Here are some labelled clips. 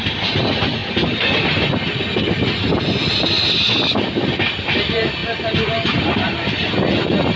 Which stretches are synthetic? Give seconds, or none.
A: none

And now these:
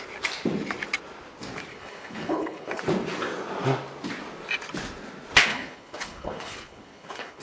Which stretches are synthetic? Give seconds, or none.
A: 1.7-2.8 (codec, HILCodec); 5.5-7.4

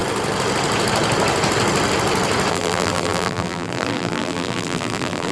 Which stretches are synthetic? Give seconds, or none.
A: 2.5-5.3 (vocoder, BigVGAN v2)

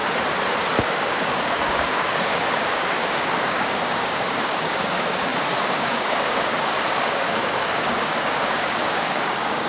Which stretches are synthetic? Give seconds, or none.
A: 0.8-9.7 (codec, DAC)